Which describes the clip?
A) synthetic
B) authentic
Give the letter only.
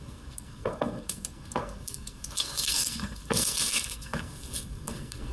A